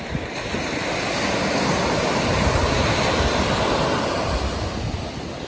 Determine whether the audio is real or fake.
real